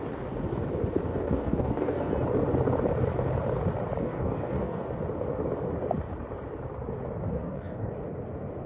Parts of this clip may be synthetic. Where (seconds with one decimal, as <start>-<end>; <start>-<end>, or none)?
1.1-2.1; 4.0-4.9; 7.3-7.9